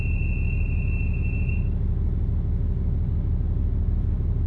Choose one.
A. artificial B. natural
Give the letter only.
B